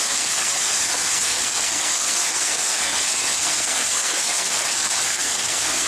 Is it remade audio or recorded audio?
remade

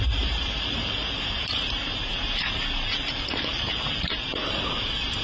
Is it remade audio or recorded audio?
remade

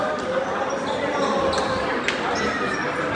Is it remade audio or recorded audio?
recorded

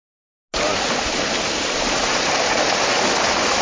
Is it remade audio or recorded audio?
recorded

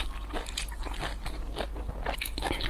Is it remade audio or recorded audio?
recorded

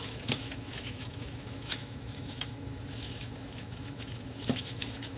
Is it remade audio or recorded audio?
remade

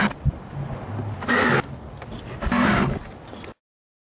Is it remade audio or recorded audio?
recorded